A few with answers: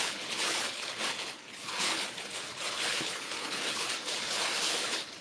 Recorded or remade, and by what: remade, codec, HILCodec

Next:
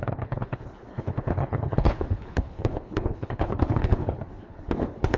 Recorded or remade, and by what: remade, codec, HILCodec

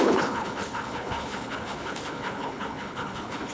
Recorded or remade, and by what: remade, codec, HILCodec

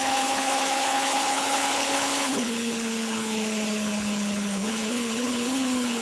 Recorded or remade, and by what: remade, codec, HILCodec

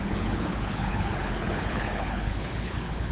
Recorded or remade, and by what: remade, codec, HILCodec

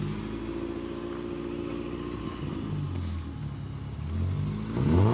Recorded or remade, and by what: recorded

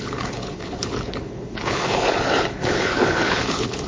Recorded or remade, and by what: remade, codec, HILCodec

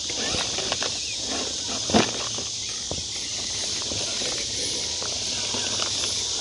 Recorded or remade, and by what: recorded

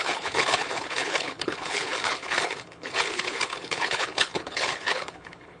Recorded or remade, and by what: remade, codec, HILCodec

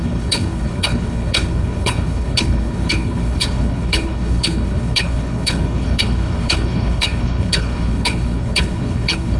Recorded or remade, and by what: remade, codec, HILCodec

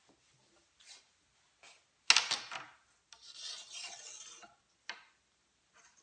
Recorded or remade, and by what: recorded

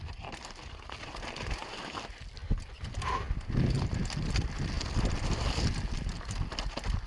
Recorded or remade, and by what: recorded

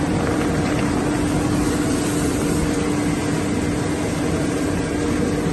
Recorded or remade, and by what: recorded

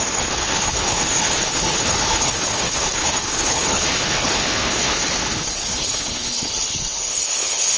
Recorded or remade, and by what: remade, codec, HILCodec